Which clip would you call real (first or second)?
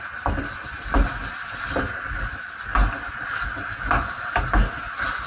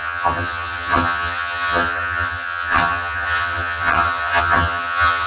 first